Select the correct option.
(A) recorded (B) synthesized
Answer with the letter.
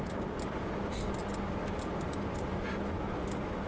A